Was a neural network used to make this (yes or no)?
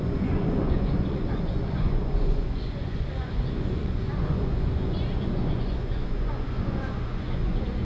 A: yes